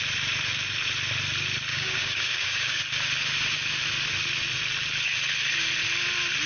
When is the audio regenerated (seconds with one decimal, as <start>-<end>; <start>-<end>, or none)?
1.7-2.8